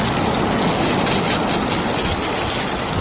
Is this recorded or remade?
recorded